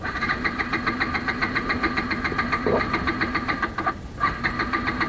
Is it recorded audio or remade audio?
recorded